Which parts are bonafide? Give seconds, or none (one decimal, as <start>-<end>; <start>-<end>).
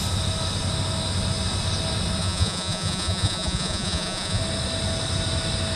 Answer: 0.0-2.2; 4.4-5.8